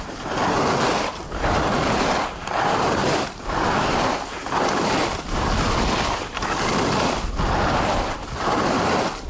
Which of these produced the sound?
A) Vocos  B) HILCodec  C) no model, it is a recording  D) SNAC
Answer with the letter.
C